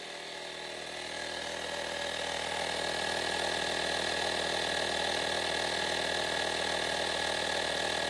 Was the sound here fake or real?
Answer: real